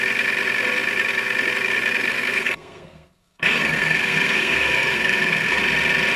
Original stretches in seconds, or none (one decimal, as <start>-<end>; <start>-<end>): 0.0-2.1; 5.6-6.2